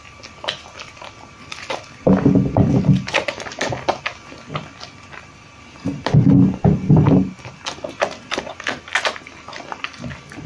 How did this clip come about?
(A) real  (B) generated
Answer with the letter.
A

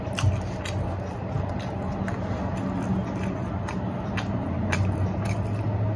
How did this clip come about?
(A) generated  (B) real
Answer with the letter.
B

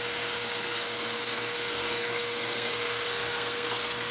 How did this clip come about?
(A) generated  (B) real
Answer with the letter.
A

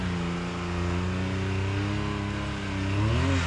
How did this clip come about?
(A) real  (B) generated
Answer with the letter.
A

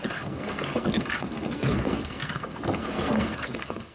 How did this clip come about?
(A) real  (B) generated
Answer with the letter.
B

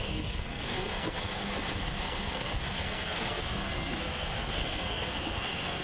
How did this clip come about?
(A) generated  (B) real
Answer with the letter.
A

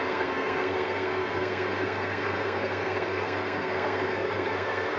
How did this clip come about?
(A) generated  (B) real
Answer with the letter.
A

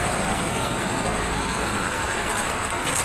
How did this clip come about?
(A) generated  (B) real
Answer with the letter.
A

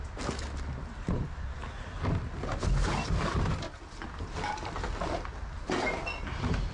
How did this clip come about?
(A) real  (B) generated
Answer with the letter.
A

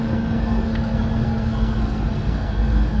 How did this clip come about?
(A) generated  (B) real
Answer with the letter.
A